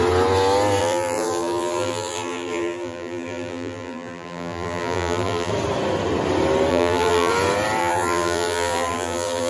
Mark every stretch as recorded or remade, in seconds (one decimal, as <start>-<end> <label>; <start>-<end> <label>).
0.0-0.8 recorded; 0.8-5.5 remade; 5.5-6.7 recorded; 6.7-7.3 remade; 7.3-7.8 recorded; 7.8-9.5 remade